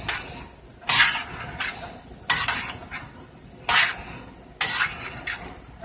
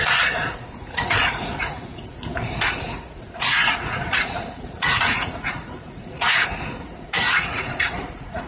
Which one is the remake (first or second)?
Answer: second